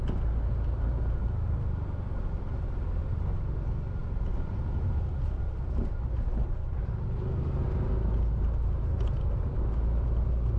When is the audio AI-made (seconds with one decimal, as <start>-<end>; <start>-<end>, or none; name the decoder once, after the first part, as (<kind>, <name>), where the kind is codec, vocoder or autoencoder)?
none